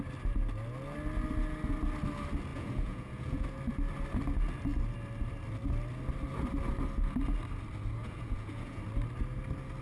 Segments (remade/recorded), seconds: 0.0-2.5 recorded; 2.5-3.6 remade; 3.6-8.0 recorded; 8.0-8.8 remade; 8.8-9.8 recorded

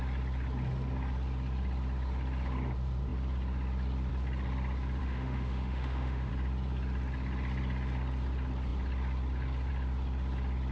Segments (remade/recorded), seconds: 0.0-5.0 recorded; 5.0-6.3 remade; 6.3-10.7 recorded

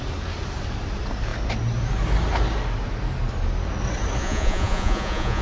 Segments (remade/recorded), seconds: 0.0-4.2 recorded; 4.2-5.4 remade

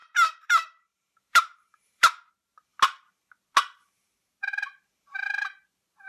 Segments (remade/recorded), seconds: 0.0-2.3 remade; 2.3-6.1 recorded